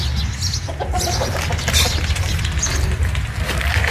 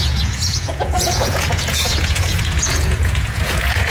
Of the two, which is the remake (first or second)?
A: second